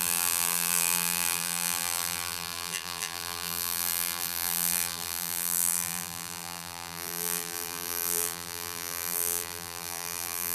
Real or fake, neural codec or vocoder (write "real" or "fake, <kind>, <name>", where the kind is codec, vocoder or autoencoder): fake, vocoder, BigVGAN v2